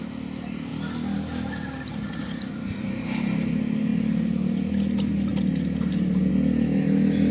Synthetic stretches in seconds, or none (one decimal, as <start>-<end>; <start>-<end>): none